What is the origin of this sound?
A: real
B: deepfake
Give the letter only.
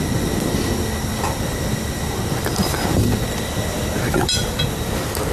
A